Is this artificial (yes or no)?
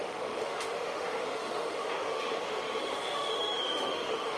yes